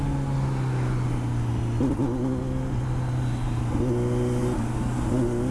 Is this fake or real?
real